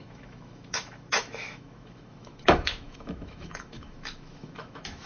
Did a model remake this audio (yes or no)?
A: yes